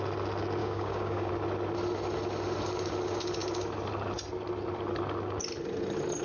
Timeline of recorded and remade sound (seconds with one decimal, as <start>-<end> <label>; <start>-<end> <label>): 0.0-0.6 recorded; 0.6-1.3 remade; 1.3-6.2 recorded